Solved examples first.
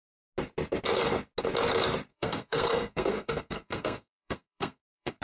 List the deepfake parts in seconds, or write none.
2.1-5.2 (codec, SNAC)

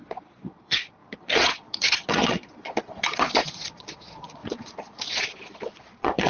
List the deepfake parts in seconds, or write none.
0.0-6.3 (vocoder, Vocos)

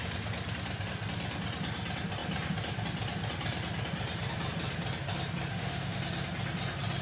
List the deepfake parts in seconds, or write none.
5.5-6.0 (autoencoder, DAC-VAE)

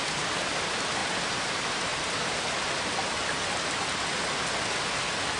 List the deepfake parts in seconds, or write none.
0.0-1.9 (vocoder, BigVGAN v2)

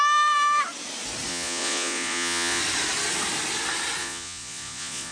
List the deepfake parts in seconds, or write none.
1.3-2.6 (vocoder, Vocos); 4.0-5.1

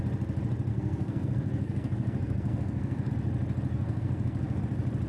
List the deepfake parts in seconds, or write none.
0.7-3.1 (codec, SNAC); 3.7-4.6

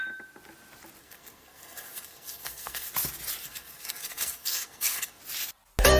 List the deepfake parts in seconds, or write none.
1.0-2.9 (codec, SNAC); 3.4-5.2